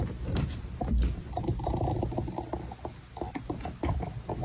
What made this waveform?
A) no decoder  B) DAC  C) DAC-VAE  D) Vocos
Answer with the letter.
A